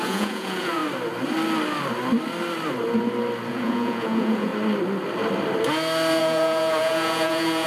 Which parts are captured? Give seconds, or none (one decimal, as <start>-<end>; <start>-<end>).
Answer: 0.8-3.5; 4.5-6.2